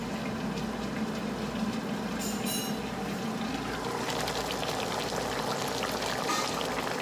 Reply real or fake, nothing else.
real